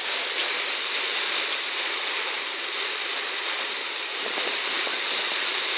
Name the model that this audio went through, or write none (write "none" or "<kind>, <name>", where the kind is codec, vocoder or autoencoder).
vocoder, BigVGAN v2